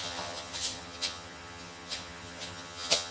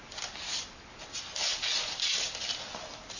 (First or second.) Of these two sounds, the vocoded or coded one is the first